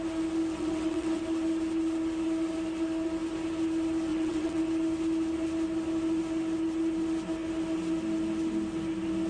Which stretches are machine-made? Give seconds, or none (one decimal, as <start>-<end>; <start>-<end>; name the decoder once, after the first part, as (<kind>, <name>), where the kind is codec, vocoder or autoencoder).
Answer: 0.5-1.2 (vocoder, WaveNeXt); 4.1-4.6